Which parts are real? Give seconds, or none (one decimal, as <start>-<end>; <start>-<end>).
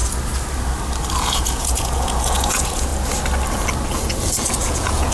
0.0-1.2; 2.9-4.5